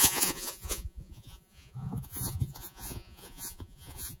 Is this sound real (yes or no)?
no